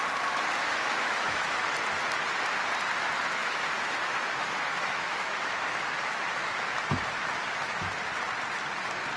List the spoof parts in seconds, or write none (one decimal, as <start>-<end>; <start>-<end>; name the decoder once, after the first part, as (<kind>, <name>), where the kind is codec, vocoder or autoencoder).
0.6-1.6 (autoencoder, DAC-VAE); 3.4-7.9